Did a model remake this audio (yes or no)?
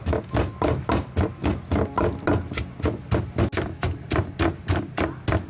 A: no